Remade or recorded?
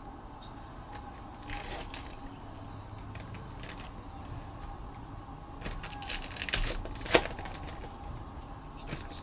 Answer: recorded